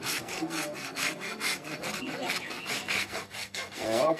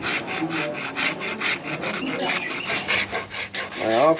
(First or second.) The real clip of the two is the second